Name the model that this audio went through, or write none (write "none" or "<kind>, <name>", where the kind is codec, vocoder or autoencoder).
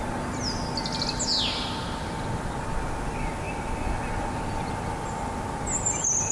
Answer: none